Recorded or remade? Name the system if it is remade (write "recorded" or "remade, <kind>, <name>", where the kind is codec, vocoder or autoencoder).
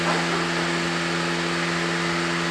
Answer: recorded